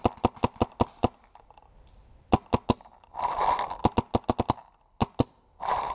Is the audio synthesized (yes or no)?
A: no